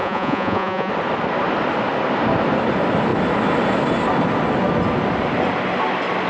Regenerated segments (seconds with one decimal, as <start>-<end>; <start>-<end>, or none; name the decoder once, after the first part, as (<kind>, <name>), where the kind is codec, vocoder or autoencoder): 0.0-0.9 (vocoder, Vocos)